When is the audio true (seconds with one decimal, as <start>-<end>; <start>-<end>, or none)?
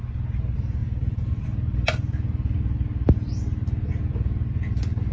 0.0-5.1